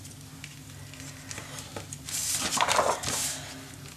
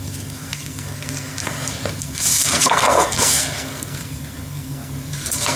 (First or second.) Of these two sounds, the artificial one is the second